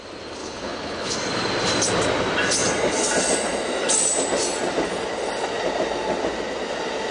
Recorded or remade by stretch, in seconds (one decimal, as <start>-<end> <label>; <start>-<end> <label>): 0.0-0.4 recorded; 0.4-1.1 remade; 1.1-7.1 recorded